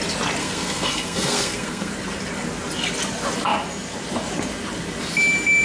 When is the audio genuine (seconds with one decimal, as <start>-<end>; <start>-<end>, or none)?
0.0-0.4; 1.9-5.6